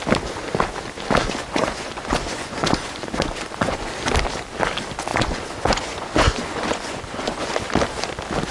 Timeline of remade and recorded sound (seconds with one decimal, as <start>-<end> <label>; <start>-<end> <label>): 0.0-1.4 recorded; 1.4-3.9 remade; 3.9-5.1 recorded; 5.1-7.7 remade; 7.7-8.5 recorded